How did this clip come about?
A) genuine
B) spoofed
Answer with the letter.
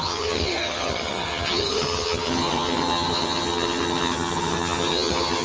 B